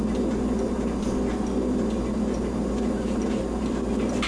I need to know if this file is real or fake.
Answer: real